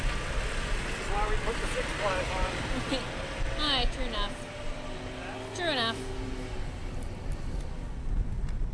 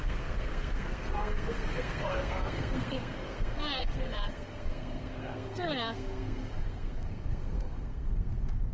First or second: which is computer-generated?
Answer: second